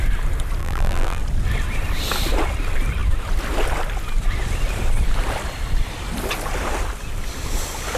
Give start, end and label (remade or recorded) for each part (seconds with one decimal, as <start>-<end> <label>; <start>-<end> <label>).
0.0-0.6 recorded; 0.6-1.2 remade; 1.2-8.0 recorded

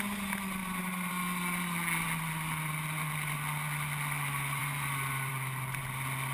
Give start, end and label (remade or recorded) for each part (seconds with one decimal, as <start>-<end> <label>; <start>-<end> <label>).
0.0-0.6 recorded; 0.6-1.1 remade; 1.1-6.3 recorded

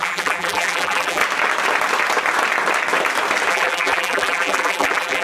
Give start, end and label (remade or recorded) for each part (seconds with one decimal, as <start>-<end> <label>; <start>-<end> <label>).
0.0-1.2 remade; 1.2-3.5 recorded; 3.5-5.2 remade